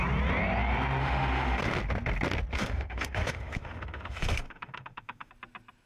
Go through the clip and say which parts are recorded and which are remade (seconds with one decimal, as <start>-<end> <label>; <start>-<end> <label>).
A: 0.0-1.0 recorded; 1.0-1.6 remade; 1.6-2.5 recorded; 2.5-5.3 remade; 5.3-5.9 recorded

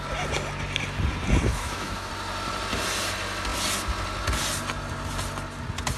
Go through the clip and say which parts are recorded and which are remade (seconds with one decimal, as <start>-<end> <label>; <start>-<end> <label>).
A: 0.0-1.5 recorded; 1.5-2.1 remade; 2.1-6.0 recorded

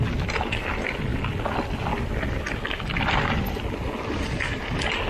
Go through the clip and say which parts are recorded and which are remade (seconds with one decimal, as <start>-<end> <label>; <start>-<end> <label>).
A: 0.0-5.1 recorded

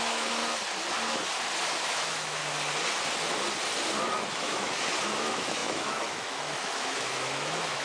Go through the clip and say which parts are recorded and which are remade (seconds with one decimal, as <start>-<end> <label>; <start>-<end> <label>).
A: 0.0-0.4 remade; 0.4-1.8 recorded; 1.8-2.4 remade; 2.4-4.3 recorded; 4.3-7.8 remade

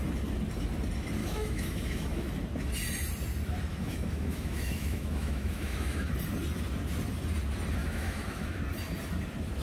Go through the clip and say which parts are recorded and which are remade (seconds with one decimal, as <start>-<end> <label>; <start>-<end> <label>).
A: 0.0-1.2 recorded; 1.2-2.3 remade; 2.3-3.7 recorded; 3.7-6.1 remade; 6.1-7.8 recorded; 7.8-8.6 remade; 8.6-9.6 recorded

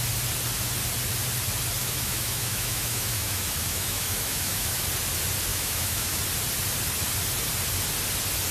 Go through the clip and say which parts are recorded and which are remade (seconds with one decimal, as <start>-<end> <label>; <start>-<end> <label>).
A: 0.0-1.8 recorded; 1.8-4.8 remade; 4.8-5.5 recorded; 5.5-6.2 remade; 6.2-8.5 recorded

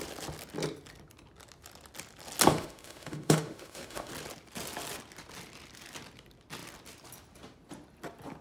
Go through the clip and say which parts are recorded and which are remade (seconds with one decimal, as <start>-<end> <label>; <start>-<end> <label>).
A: 0.0-2.5 recorded; 2.5-4.1 remade; 4.1-8.4 recorded